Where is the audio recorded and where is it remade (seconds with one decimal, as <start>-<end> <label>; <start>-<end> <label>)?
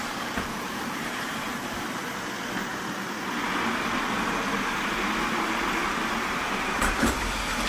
0.0-2.0 remade; 2.0-5.8 recorded; 5.8-7.7 remade